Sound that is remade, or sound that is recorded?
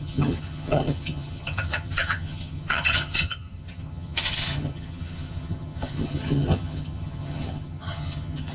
remade